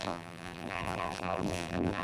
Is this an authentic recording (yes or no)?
no